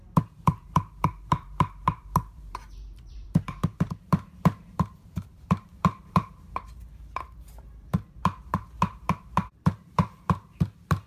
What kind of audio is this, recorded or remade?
remade